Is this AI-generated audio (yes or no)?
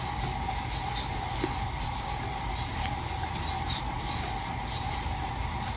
no